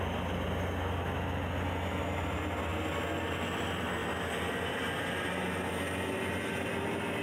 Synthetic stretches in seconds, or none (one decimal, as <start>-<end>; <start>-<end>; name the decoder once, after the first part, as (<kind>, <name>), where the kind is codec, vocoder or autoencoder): none